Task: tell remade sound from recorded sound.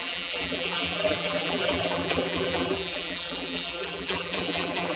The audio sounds remade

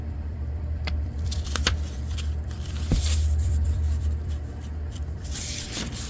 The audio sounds remade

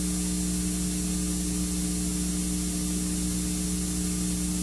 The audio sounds recorded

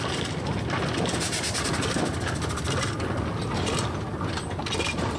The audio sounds recorded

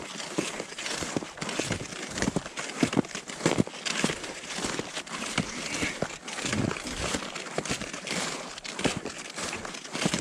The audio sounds recorded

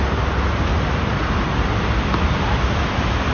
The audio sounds recorded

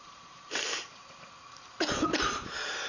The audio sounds remade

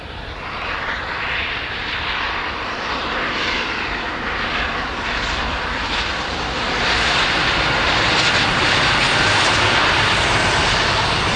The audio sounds remade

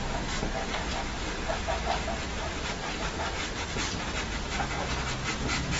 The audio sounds recorded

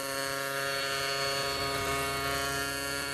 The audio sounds recorded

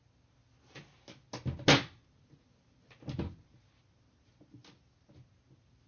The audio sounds recorded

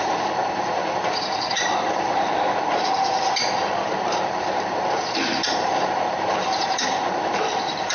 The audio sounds remade